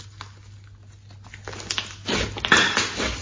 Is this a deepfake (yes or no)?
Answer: no